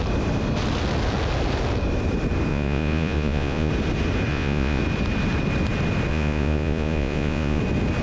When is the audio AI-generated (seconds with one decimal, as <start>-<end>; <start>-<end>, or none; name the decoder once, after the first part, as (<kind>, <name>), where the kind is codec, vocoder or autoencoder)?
2.5-3.7 (vocoder, Vocos); 4.3-4.8; 6.1-7.6